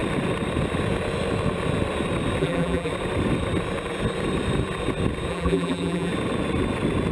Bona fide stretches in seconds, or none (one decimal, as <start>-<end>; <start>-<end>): 0.0-2.4; 2.9-5.3; 6.1-7.1